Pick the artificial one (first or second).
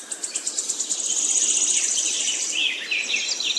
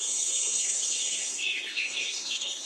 second